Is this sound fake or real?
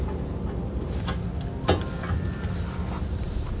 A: real